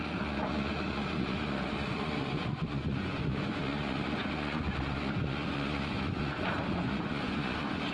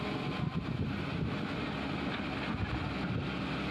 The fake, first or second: first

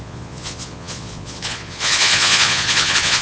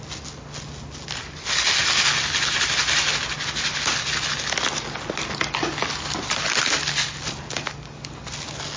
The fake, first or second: first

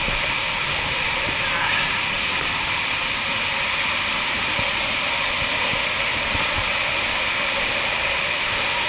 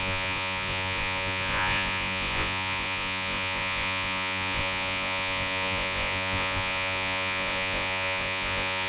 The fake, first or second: second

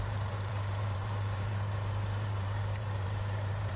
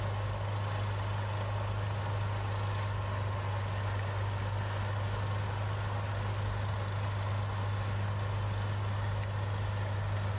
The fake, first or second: first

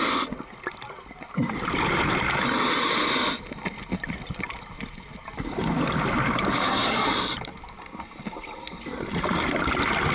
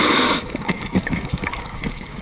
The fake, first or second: second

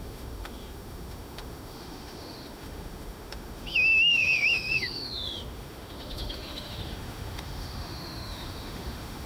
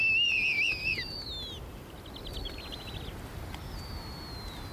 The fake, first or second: first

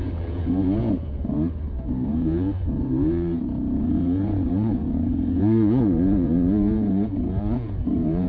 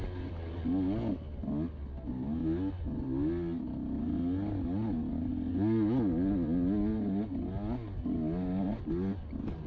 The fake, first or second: first